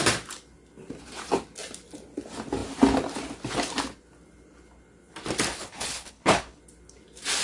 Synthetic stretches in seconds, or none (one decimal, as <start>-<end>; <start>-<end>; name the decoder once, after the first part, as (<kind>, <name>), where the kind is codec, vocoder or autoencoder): 5.5-6.6 (codec, HILCodec)